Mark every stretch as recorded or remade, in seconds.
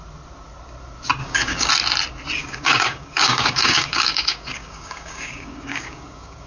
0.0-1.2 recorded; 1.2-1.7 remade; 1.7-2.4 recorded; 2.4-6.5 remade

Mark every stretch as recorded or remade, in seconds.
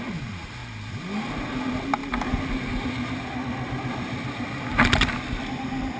0.0-6.0 recorded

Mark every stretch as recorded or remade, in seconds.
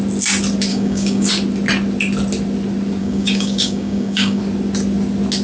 0.0-0.7 recorded; 0.7-1.3 remade; 1.3-3.0 recorded; 3.0-4.4 remade; 4.4-5.4 recorded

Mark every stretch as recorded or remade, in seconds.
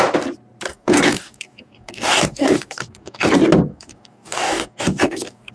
0.0-0.7 recorded; 0.7-3.3 remade; 3.3-3.7 recorded; 3.7-5.5 remade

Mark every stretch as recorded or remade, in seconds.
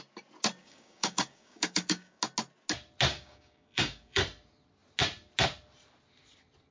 0.0-0.6 recorded; 0.6-2.2 remade; 2.2-3.1 recorded; 3.1-4.2 remade; 4.2-6.7 recorded